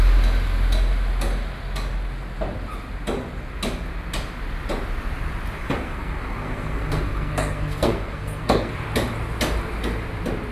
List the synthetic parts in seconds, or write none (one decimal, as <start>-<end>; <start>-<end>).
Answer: 5.6-8.7